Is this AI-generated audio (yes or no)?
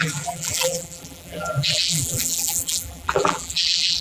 yes